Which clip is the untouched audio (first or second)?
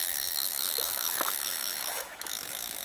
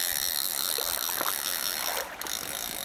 second